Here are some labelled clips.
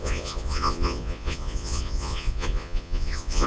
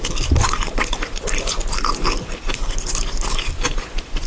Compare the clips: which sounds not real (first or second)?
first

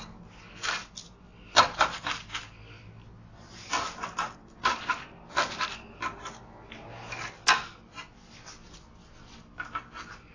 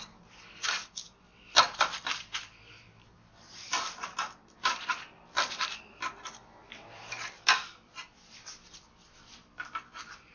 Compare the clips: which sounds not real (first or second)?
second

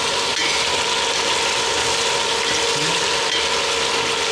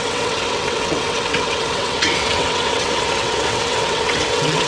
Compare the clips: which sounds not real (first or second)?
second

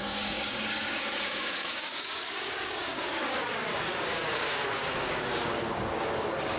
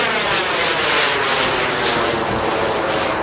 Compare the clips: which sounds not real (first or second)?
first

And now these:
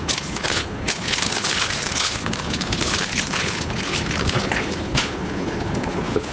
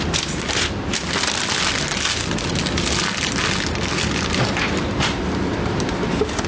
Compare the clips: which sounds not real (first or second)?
first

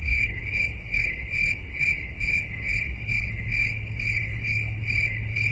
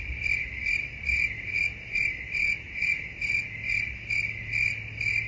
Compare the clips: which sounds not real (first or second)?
first